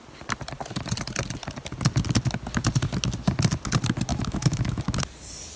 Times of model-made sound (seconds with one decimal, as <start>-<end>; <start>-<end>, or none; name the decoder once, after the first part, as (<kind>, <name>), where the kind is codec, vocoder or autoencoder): 4.1-4.8 (autoencoder, DAC-VAE)